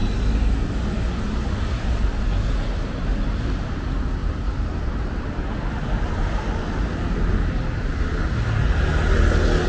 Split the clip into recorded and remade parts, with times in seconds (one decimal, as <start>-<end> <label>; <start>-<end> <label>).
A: 0.0-9.7 recorded